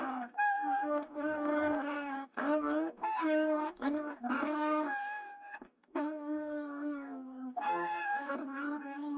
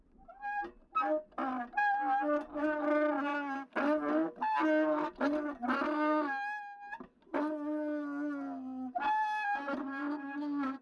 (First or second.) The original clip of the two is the second